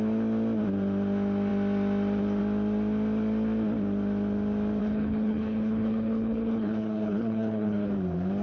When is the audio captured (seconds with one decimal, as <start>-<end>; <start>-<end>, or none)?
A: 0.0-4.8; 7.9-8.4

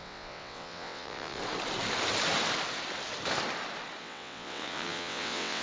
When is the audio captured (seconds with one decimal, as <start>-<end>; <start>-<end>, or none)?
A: 1.4-4.0

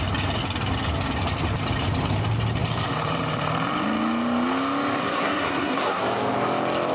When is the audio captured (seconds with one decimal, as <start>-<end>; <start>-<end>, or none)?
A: 0.0-5.0; 6.0-6.9

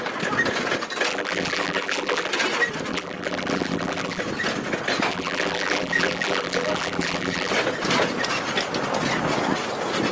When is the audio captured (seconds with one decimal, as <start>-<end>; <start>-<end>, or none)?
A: 0.0-1.1; 2.3-2.9; 4.2-5.1; 7.5-10.1

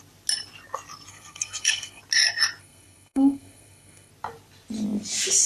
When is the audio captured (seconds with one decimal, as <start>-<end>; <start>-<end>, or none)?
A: 0.0-1.1; 2.0-2.6; 4.1-5.5

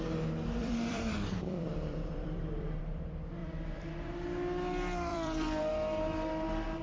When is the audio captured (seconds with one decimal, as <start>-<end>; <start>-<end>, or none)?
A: 0.0-0.6; 2.8-3.4; 3.9-5.1; 5.6-6.8

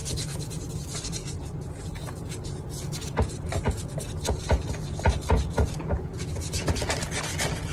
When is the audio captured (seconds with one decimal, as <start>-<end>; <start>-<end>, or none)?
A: 0.7-3.0; 3.7-7.7

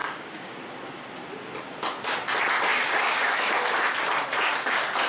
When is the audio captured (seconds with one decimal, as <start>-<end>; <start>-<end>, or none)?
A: 0.6-2.7; 3.5-5.1